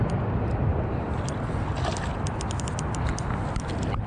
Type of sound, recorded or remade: recorded